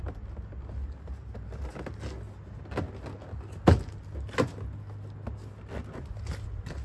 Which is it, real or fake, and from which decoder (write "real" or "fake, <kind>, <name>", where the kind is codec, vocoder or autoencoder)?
real